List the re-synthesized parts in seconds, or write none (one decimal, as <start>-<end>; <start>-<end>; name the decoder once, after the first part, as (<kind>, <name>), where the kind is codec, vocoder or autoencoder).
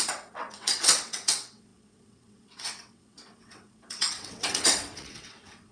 0.0-5.7 (vocoder, WaveNeXt)